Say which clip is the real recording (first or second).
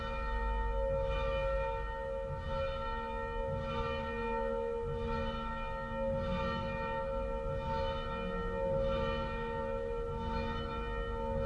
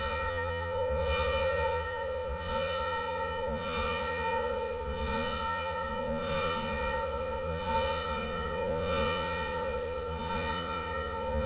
first